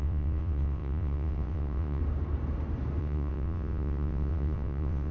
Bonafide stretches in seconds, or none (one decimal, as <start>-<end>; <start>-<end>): 2.0-3.0